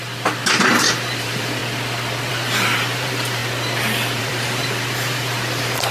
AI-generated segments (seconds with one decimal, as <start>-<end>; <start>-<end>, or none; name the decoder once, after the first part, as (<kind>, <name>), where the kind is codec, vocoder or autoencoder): 0.6-1.6 (vocoder, BigVGAN v2); 2.3-3.4; 4.2-5.9